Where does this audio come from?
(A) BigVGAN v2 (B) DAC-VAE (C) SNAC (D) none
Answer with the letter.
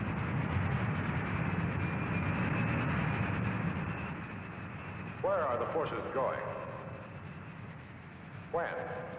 D